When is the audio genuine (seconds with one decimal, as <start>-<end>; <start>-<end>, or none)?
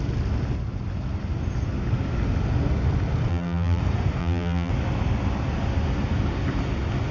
0.0-3.3; 3.8-4.2; 4.7-7.1